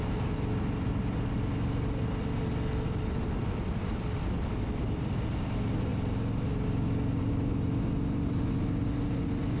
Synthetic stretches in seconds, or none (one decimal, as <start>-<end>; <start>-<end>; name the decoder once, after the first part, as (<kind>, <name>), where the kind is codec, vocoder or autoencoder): none